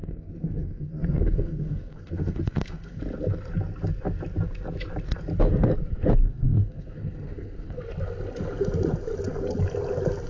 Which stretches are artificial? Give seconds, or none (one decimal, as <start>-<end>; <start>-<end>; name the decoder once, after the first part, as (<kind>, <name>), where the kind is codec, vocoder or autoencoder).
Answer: 0.0-3.0 (codec, SNAC); 6.2-7.8